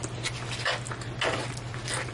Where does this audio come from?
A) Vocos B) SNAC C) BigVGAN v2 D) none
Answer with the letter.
D